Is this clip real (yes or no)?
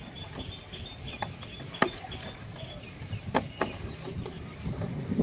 yes